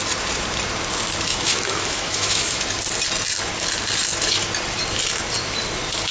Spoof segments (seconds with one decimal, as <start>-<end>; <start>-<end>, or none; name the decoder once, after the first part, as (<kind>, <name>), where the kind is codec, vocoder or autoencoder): 1.3-2.6 (autoencoder, DAC-VAE)